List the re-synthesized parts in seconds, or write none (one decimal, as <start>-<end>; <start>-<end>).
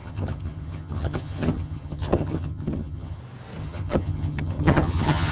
0.0-3.2; 3.6-5.3